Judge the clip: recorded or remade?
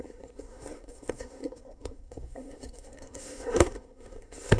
remade